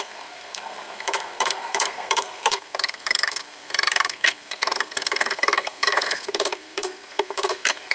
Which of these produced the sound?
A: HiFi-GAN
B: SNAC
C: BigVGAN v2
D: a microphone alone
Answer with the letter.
B